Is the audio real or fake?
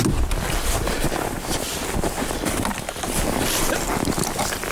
real